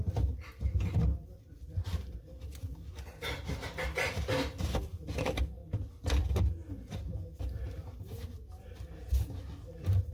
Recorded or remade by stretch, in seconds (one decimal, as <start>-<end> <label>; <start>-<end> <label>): 0.0-10.1 recorded